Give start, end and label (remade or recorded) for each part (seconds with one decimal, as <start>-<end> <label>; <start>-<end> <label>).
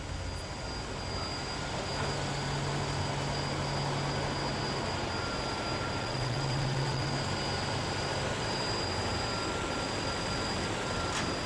0.0-6.0 recorded; 6.0-7.1 remade; 7.1-11.5 recorded